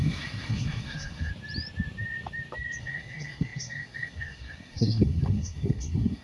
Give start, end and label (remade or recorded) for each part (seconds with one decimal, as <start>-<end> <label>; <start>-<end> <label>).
0.0-1.3 remade; 1.3-2.8 recorded; 2.8-6.2 remade